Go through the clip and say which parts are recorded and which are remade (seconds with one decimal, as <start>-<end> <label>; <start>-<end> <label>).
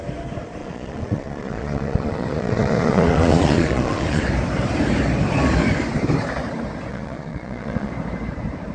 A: 0.0-0.6 recorded; 0.6-4.2 remade; 4.2-6.9 recorded; 6.9-7.9 remade; 7.9-8.7 recorded